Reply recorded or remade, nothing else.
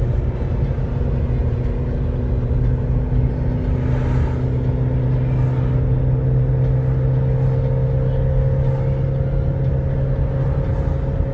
recorded